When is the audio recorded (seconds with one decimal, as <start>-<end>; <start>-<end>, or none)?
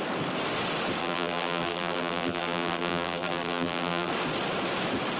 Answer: 0.0-1.0; 4.1-5.2